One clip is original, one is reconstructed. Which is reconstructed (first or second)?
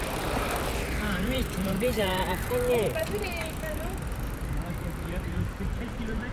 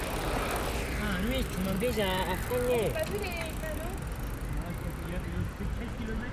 first